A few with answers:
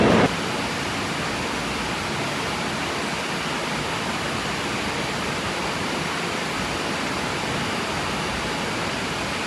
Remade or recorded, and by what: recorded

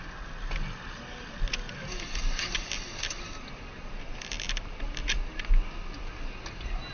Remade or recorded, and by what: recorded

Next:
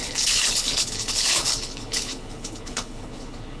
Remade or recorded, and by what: remade, codec, HILCodec